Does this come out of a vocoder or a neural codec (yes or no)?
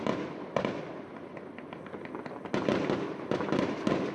no